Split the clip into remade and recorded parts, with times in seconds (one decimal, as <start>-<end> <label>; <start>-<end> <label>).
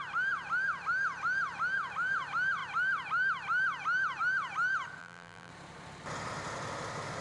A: 0.0-5.0 recorded; 5.0-5.5 remade; 5.5-7.2 recorded